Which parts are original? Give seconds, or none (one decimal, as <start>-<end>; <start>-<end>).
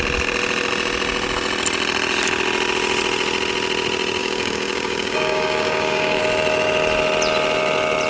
0.0-4.2; 6.2-8.1